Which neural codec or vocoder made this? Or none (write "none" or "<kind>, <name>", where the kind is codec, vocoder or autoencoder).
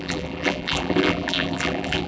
vocoder, BigVGAN v2